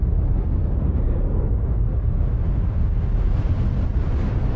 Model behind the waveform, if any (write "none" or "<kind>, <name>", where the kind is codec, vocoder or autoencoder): none